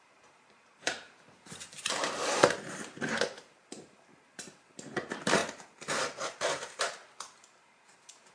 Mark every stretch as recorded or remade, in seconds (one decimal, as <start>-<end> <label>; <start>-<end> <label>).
0.0-5.4 remade; 5.4-5.9 recorded; 5.9-7.0 remade; 7.0-7.6 recorded; 7.6-8.3 remade